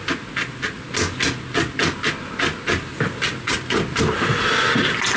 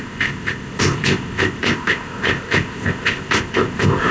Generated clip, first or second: second